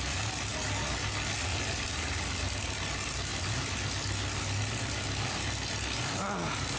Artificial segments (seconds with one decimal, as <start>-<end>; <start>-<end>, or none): none